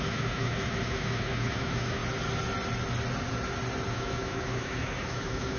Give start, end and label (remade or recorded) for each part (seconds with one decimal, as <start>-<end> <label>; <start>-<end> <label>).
0.0-2.0 remade; 2.0-3.9 recorded; 3.9-5.6 remade